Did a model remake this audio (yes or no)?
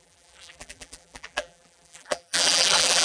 yes